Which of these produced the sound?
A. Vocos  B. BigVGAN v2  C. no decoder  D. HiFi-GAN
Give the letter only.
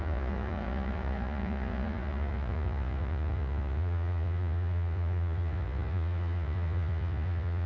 A